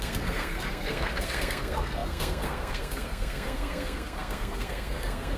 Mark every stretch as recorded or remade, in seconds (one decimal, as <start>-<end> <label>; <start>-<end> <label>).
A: 0.0-5.4 remade